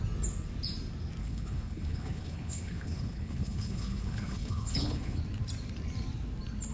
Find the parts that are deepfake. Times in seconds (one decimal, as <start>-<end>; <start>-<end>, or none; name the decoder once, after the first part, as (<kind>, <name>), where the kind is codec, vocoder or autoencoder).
1.2-5.2 (codec, HILCodec)